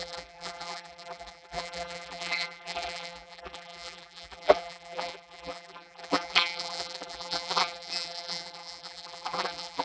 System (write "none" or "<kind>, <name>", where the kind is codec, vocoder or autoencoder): vocoder, BigVGAN v2